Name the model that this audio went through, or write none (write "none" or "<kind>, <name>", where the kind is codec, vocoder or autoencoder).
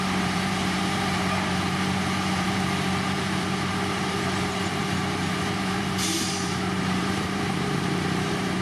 vocoder, BigVGAN v2